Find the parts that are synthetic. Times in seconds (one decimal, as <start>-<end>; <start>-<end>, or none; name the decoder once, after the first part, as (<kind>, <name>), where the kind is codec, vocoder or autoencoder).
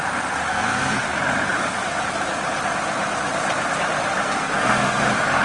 0.5-1.0 (codec, SNAC); 4.2-5.0